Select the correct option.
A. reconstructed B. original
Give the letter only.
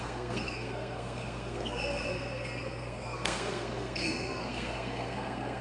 A